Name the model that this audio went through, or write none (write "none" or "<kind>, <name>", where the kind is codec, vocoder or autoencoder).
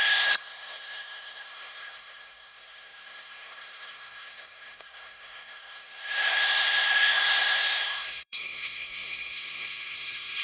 codec, SNAC